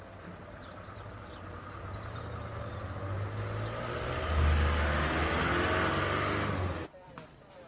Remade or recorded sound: recorded